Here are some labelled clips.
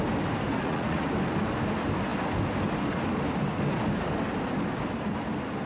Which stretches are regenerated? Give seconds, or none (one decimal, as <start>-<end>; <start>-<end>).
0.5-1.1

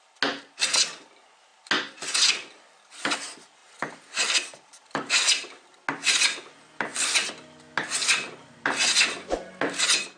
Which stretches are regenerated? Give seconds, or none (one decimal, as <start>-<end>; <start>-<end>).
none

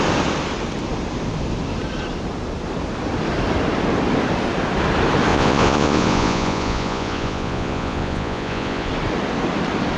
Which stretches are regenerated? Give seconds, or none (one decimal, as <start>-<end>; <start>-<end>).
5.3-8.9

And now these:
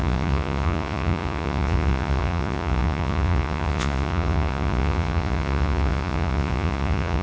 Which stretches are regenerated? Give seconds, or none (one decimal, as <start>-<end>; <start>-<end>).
0.0-7.2